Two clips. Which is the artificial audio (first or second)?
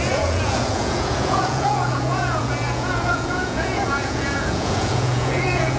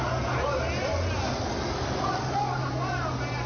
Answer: first